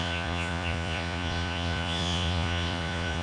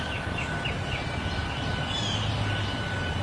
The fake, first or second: first